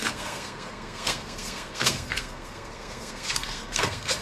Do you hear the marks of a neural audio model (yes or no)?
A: yes